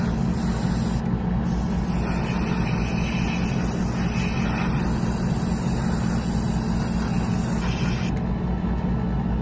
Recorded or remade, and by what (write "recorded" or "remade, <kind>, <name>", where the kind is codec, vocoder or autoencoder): recorded